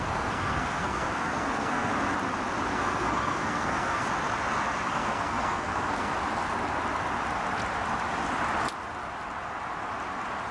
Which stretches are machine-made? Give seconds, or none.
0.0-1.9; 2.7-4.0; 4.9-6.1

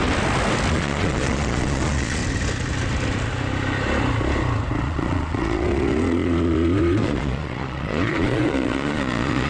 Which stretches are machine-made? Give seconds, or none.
0.7-2.2; 4.8-9.5

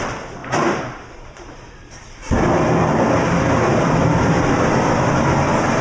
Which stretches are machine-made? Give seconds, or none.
0.4-3.1; 3.7-5.1

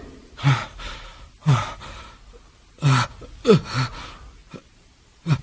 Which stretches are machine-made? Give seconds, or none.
4.4-5.4

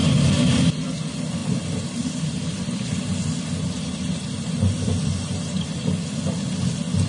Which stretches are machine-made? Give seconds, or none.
0.0-0.7; 1.4-5.7

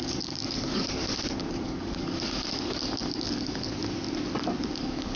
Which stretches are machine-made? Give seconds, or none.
0.0-1.0; 1.5-3.8; 4.8-5.2